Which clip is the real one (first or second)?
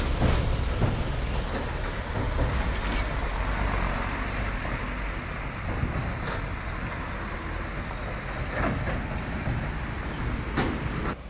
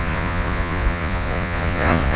first